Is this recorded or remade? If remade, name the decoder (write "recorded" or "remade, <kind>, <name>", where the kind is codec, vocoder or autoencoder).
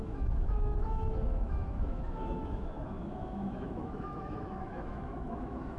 remade, autoencoder, DAC-VAE